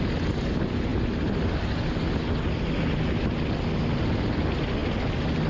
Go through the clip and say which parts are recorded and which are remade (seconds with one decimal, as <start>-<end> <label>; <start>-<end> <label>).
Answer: 0.0-5.5 recorded